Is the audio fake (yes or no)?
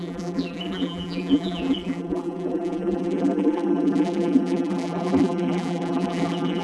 yes